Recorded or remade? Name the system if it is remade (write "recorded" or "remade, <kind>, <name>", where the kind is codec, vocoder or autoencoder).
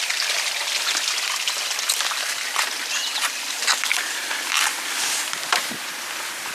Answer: recorded